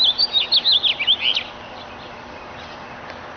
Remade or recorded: recorded